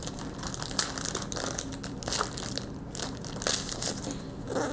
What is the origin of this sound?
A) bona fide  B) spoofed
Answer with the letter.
A